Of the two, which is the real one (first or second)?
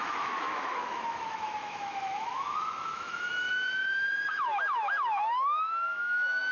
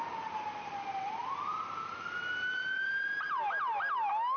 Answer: second